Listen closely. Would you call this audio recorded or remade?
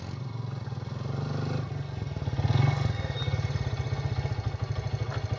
recorded